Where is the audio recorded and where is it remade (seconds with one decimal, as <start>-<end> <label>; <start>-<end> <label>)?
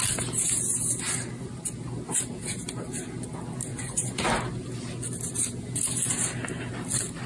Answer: 0.0-3.7 recorded; 3.7-4.2 remade; 4.2-7.3 recorded